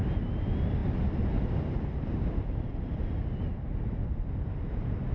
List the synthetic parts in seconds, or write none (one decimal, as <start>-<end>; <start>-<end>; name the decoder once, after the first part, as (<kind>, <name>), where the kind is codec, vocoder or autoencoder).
none